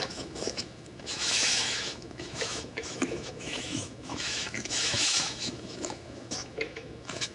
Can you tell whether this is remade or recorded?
remade